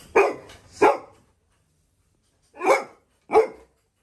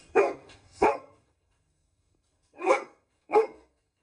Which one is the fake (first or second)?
second